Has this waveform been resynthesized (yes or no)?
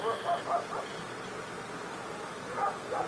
no